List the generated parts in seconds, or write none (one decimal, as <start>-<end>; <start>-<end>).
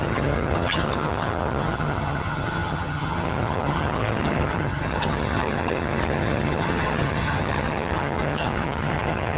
0.0-9.4